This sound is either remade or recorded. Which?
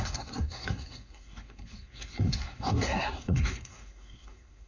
remade